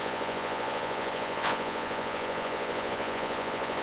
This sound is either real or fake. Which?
fake